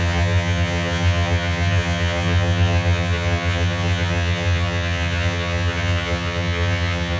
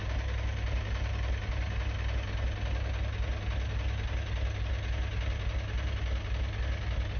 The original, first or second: second